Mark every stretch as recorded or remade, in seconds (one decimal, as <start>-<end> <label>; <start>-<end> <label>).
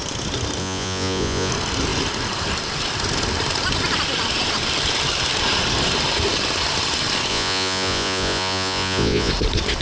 0.0-0.6 recorded; 0.6-1.5 remade; 1.5-7.3 recorded; 7.3-9.3 remade; 9.3-9.8 recorded